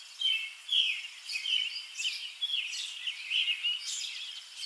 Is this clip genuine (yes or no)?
yes